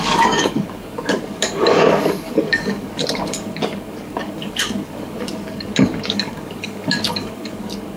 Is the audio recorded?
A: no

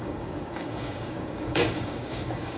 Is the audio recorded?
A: no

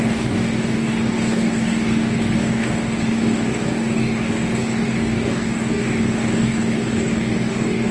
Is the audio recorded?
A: no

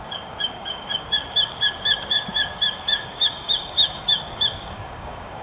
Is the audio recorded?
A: no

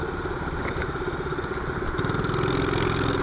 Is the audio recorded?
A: yes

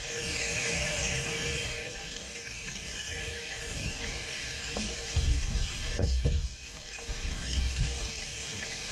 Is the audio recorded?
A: no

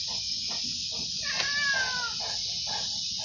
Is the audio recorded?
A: yes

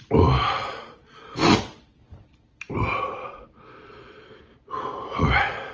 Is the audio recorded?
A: yes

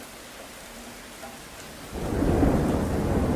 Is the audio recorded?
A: yes